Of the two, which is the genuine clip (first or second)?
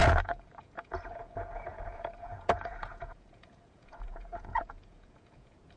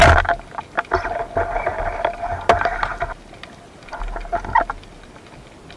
second